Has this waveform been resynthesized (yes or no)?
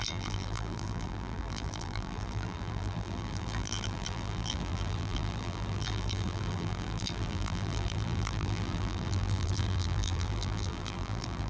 yes